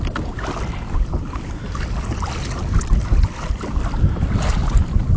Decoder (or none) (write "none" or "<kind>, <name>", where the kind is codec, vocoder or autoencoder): none